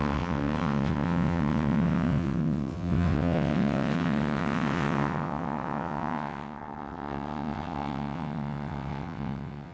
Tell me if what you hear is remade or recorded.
remade